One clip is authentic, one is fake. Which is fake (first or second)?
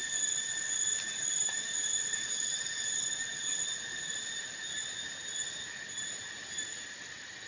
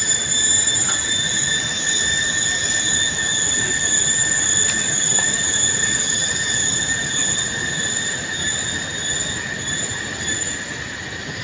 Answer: first